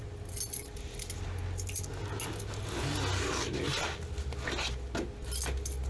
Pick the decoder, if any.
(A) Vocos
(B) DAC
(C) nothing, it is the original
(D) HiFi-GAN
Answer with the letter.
C